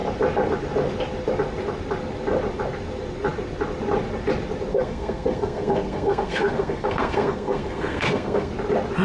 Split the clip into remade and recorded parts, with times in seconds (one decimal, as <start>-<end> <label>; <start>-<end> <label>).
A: 0.0-4.7 recorded; 4.7-8.5 remade; 8.5-9.0 recorded